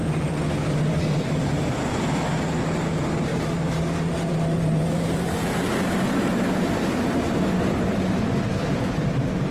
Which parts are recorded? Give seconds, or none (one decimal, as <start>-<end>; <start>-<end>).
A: 1.9-3.3; 8.0-9.5